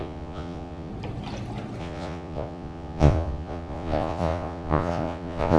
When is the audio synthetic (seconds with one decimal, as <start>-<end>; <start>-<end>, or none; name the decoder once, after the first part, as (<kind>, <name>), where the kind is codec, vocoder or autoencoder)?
0.0-0.9 (vocoder, Vocos); 1.8-5.6